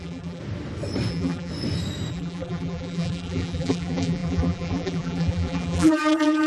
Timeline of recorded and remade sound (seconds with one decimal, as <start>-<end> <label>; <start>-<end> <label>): 0.0-0.4 remade; 0.4-1.1 recorded; 1.1-1.5 remade; 1.5-2.1 recorded; 2.1-6.5 remade